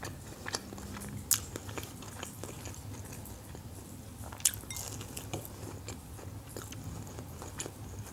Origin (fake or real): real